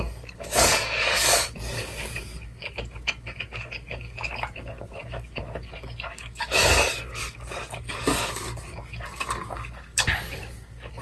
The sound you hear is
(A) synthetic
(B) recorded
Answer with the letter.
A